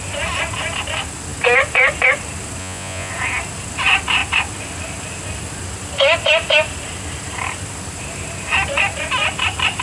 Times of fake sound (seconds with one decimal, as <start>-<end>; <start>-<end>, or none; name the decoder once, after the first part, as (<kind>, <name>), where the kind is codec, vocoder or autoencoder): 2.6-3.1 (vocoder, Vocos)